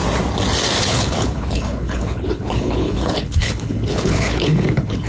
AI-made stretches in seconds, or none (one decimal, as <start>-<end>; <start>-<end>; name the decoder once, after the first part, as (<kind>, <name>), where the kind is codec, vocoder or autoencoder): 0.8-5.1 (codec, HILCodec)